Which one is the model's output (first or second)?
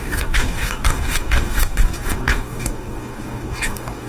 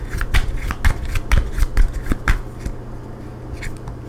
first